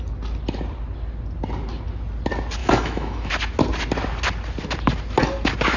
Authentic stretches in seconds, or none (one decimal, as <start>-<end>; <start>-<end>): 0.0-2.6; 3.3-5.8